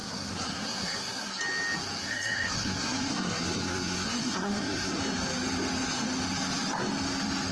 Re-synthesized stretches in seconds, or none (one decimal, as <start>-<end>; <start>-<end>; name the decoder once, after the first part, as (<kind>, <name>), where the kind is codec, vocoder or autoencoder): 0.0-1.4 (codec, SNAC); 2.0-5.0